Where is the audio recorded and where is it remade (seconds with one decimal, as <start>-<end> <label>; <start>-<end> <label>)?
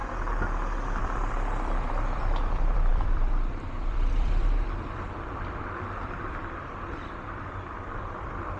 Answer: 0.0-1.0 recorded; 1.0-8.6 remade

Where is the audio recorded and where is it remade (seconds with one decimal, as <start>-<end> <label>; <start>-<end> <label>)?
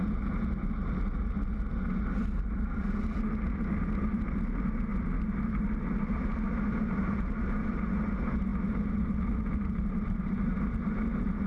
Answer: 0.0-11.5 recorded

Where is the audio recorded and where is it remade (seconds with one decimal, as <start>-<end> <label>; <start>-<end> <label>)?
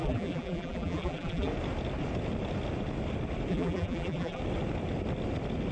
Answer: 0.0-1.5 remade; 1.5-3.5 recorded; 3.5-4.4 remade; 4.4-5.7 recorded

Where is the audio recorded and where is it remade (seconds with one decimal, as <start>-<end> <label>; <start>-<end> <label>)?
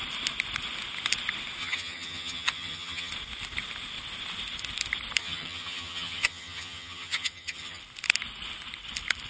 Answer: 0.0-1.6 recorded; 1.6-3.1 remade; 3.1-5.2 recorded; 5.2-7.8 remade; 7.8-9.3 recorded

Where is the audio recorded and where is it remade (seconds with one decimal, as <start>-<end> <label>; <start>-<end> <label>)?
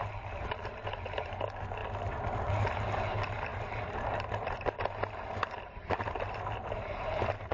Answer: 0.0-1.8 remade; 1.8-2.4 recorded; 2.4-7.5 remade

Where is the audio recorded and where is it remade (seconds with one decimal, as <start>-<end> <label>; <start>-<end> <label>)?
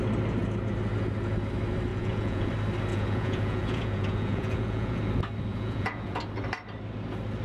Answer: 0.0-1.9 recorded; 1.9-2.5 remade; 2.5-2.9 recorded; 2.9-5.0 remade; 5.0-5.5 recorded; 5.5-6.2 remade; 6.2-7.4 recorded